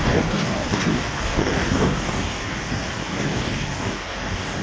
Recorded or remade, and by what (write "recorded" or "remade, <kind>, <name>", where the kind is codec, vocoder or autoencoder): remade, codec, DAC